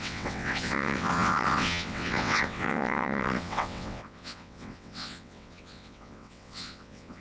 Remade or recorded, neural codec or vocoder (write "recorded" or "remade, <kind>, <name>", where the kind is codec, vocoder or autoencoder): remade, vocoder, WaveNeXt